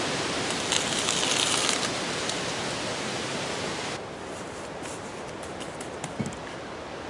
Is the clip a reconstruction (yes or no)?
no